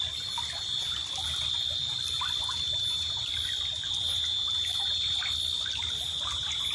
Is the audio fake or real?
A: real